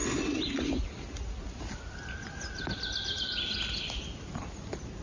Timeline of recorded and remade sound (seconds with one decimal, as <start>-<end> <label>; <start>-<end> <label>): 0.0-5.0 recorded

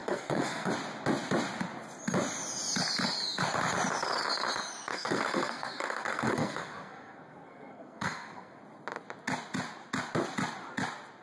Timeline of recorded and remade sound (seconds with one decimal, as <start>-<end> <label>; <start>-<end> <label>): 0.0-0.7 remade; 0.7-4.9 recorded; 4.9-8.6 remade; 8.6-11.2 recorded